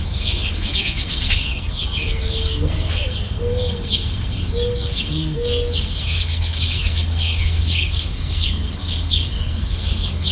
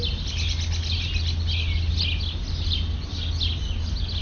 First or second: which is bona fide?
second